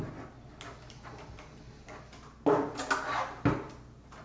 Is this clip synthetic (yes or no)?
no